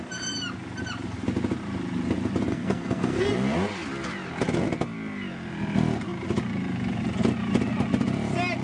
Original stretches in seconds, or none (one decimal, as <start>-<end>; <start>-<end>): 0.0-2.5; 3.3-8.6